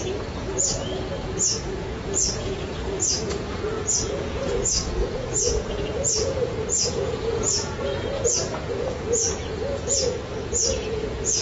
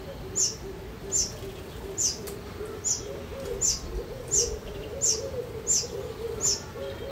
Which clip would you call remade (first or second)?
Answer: first